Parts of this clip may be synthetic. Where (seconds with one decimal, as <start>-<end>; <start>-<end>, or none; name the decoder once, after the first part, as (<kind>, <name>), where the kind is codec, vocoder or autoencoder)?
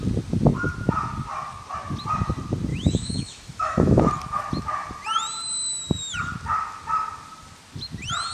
2.7-4.1 (autoencoder, DAC-VAE)